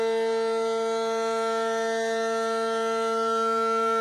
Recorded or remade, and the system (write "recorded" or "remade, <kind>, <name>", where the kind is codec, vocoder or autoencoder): recorded